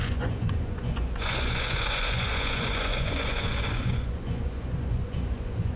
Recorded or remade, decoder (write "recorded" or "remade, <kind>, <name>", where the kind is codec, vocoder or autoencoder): remade, vocoder, Vocos